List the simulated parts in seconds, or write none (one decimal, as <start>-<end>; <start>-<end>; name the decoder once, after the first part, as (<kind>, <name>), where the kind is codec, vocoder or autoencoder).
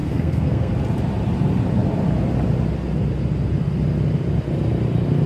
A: 0.0-0.7 (codec, SNAC)